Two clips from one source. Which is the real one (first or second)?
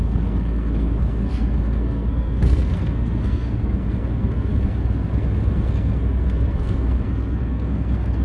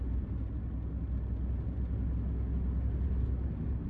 second